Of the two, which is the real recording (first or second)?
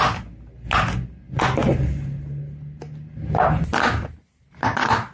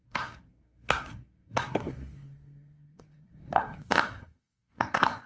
first